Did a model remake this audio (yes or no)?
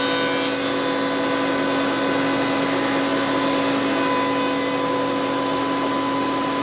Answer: no